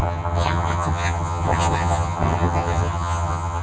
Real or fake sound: fake